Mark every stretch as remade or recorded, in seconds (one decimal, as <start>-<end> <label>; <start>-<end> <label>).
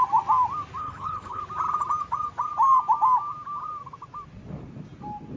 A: 0.0-0.8 recorded; 0.8-1.4 remade; 1.4-5.4 recorded